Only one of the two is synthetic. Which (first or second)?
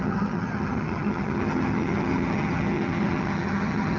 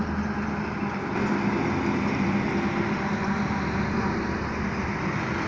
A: first